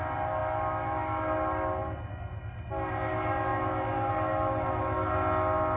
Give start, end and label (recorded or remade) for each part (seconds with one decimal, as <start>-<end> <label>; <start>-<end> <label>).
0.0-5.8 recorded